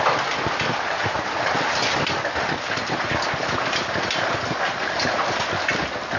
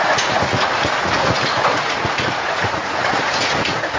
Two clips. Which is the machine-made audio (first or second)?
second